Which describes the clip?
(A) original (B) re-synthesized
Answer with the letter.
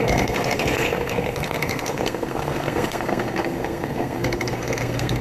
B